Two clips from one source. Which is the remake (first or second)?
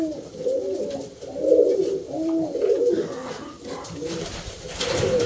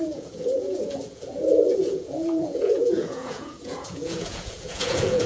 second